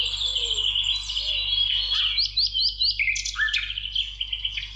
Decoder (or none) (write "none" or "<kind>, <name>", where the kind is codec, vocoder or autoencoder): none